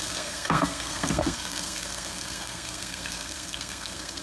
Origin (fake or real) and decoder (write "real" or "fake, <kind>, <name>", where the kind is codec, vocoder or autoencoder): fake, codec, SNAC